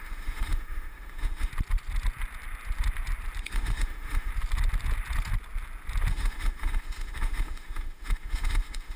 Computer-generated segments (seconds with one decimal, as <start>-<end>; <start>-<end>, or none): 0.0-1.5; 3.4-4.3; 6.1-9.0